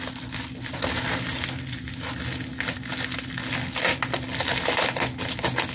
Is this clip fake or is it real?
real